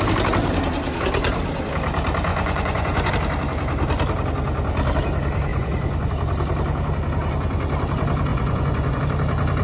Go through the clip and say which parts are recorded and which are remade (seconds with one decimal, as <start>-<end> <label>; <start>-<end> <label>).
0.0-2.3 recorded; 2.3-3.1 remade; 3.1-5.5 recorded; 5.5-6.1 remade; 6.1-8.3 recorded; 8.3-9.0 remade; 9.0-9.6 recorded